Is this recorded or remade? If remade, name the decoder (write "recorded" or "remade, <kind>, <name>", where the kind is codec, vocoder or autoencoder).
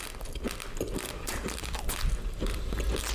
remade, vocoder, BigVGAN v2